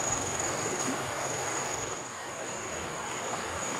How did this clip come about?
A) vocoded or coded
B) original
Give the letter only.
A